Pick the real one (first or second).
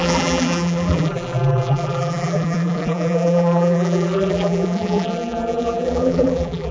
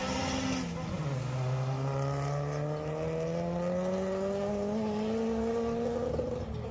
second